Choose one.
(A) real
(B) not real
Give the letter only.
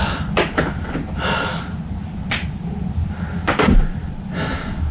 A